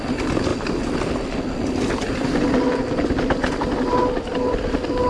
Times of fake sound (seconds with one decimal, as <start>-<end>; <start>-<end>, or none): none